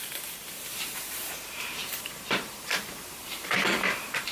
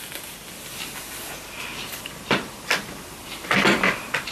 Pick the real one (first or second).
second